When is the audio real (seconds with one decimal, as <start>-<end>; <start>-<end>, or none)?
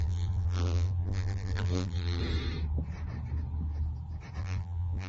2.2-4.4